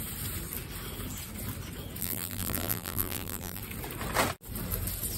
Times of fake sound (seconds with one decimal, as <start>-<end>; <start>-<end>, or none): 2.0-3.6

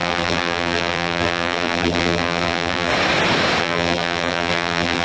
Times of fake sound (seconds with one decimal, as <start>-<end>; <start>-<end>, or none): 0.0-2.9; 3.6-5.0

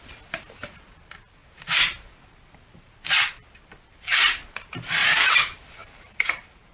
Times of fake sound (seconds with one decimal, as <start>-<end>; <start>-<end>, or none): 1.4-3.3; 5.0-6.7

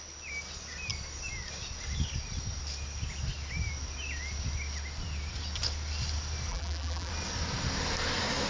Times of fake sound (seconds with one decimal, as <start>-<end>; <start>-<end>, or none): 6.5-7.1

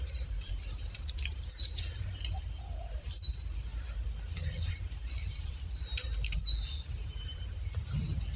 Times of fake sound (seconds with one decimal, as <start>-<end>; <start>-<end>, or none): 0.0-3.7; 4.7-8.4

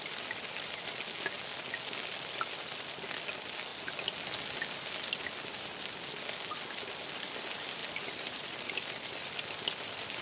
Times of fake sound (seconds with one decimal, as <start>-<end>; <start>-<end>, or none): 7.8-9.4

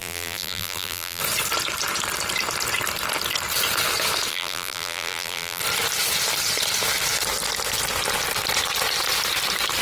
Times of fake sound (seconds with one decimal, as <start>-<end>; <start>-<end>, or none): 0.0-1.2; 4.3-5.6

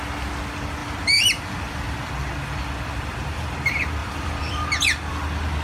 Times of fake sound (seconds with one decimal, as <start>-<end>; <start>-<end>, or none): 0.8-2.1; 4.0-4.5